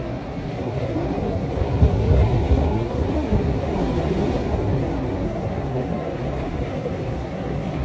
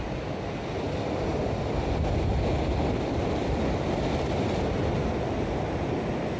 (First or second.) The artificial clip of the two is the first